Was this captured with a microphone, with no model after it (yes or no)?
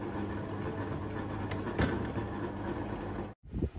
yes